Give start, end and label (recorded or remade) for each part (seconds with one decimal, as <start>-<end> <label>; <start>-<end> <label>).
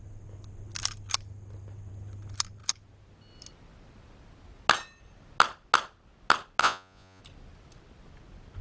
0.0-6.6 recorded; 6.6-7.2 remade; 7.2-8.6 recorded